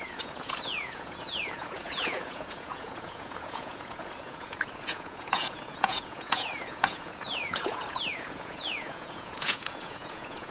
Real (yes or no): no